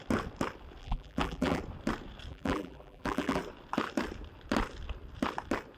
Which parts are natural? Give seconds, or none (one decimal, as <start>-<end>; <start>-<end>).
0.0-0.8; 1.6-2.3; 3.4-5.8